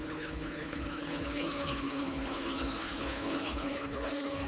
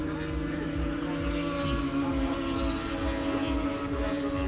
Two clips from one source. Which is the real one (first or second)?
second